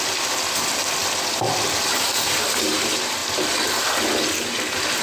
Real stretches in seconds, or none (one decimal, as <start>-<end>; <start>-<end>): 0.0-1.0; 2.5-5.0